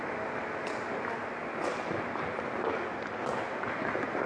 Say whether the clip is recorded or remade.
recorded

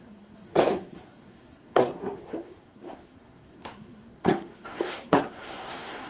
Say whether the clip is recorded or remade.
remade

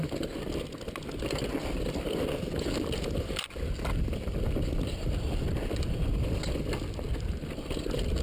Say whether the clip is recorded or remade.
recorded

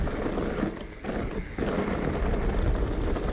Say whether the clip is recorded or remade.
recorded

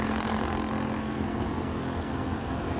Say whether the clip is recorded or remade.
remade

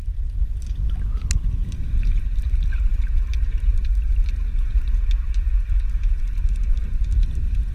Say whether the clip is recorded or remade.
recorded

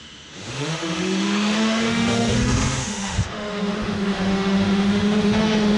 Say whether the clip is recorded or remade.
remade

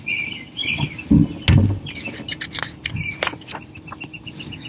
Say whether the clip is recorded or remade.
recorded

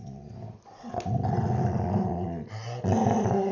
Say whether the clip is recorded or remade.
recorded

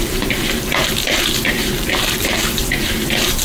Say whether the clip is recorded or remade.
remade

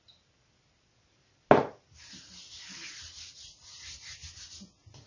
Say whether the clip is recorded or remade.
recorded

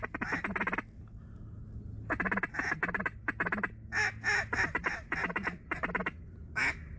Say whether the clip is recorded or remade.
recorded